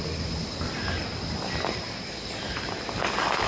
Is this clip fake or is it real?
real